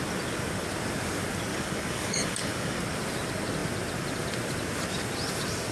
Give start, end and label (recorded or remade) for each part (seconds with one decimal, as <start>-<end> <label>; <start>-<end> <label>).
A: 0.0-1.5 recorded; 1.5-2.8 remade; 2.8-5.7 recorded